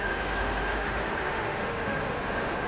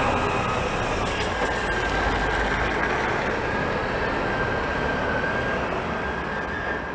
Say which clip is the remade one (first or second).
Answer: first